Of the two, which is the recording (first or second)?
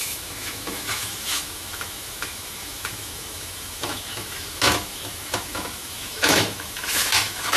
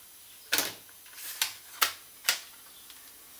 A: second